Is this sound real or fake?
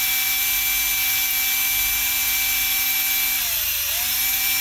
real